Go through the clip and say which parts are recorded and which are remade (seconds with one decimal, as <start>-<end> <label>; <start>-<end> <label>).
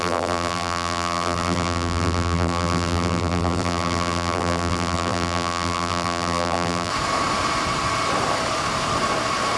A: 0.0-6.9 remade; 6.9-9.6 recorded